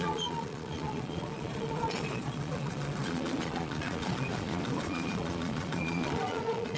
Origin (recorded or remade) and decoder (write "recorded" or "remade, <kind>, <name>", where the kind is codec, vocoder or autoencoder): remade, vocoder, Vocos